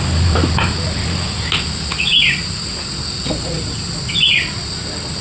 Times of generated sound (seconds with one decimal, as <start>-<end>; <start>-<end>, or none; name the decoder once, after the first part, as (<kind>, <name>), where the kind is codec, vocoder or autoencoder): none